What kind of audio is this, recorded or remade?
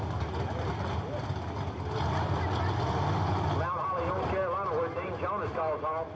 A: recorded